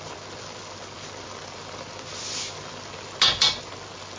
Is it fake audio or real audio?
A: real